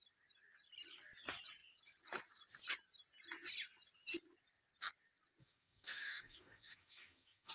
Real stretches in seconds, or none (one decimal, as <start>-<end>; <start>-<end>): 0.0-5.4